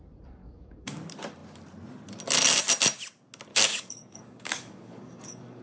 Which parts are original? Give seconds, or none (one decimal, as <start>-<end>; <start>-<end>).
0.0-0.4; 1.0-3.5